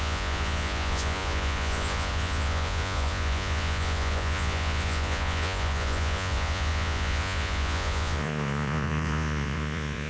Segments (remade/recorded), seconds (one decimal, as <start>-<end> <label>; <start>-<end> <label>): 0.0-10.1 remade